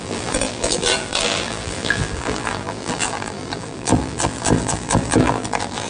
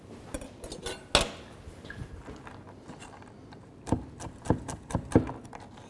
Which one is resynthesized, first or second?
first